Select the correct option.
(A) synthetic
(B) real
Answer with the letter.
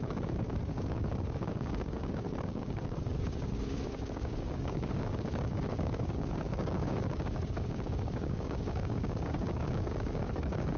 A